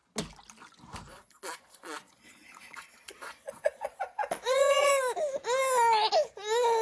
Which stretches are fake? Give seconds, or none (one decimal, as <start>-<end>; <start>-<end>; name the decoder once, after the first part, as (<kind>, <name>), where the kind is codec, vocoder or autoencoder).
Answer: 1.1-4.9 (vocoder, Vocos)